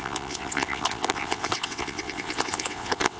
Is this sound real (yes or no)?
no